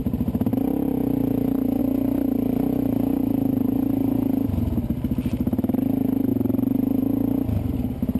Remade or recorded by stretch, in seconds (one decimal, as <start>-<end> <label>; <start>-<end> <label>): 0.0-8.2 recorded